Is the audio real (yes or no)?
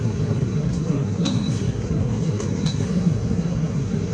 no